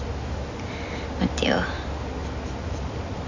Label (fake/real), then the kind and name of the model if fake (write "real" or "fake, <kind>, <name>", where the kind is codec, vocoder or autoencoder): real